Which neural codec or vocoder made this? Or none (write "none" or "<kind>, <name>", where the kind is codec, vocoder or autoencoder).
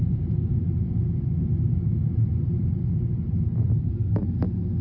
none